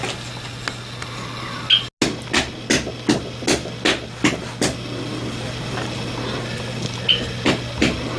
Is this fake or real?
real